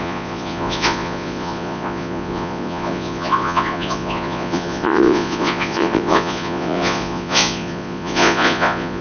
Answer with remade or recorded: remade